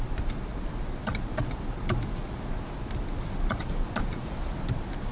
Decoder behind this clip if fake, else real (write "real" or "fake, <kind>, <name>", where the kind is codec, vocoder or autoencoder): real